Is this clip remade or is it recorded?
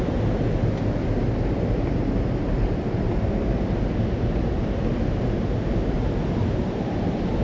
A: recorded